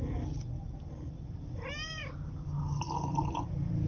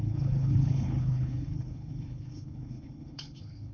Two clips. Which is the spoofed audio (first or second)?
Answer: second